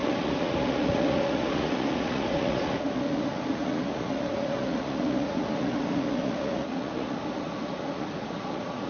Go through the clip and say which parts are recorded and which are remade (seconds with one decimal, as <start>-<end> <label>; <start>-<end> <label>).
0.0-8.9 remade